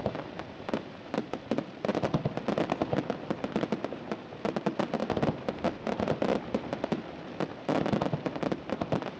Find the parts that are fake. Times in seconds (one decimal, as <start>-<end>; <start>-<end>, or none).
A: 0.0-9.2